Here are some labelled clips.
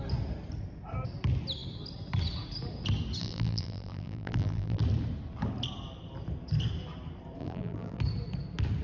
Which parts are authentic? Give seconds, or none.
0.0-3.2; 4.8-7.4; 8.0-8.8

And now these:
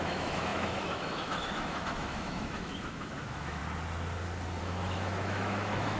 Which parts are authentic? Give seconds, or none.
3.6-4.6

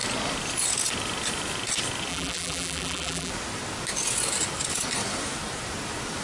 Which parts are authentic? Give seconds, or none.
0.0-2.1; 3.3-6.2

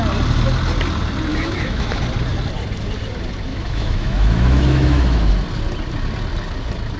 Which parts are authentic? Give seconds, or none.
0.0-1.3; 2.0-3.5; 5.3-7.0

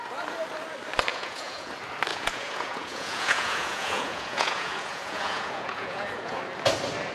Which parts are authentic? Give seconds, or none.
0.0-1.1; 1.7-2.1; 6.4-7.1

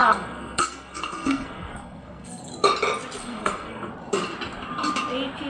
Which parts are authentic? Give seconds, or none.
2.5-3.2; 3.9-5.5

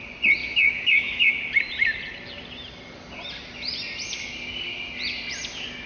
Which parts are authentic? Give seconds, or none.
0.0-0.4; 1.3-5.9

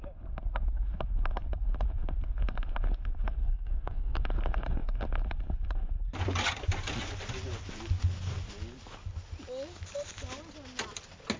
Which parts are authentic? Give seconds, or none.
0.0-3.4; 4.2-11.4